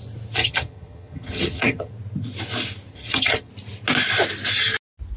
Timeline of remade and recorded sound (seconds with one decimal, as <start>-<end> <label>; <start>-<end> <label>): 0.0-0.4 recorded; 0.4-1.9 remade; 1.9-2.9 recorded; 2.9-3.5 remade; 3.5-5.2 recorded